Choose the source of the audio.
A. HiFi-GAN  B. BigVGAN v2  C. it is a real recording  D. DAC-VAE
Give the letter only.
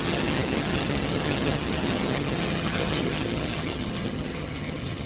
A